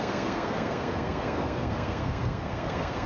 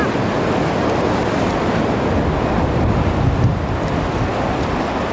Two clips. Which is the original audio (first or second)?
second